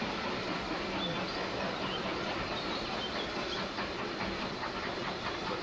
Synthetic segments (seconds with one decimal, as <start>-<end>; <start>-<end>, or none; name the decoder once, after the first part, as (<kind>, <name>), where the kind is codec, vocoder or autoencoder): none